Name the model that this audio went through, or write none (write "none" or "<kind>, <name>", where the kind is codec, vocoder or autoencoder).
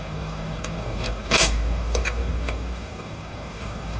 codec, DAC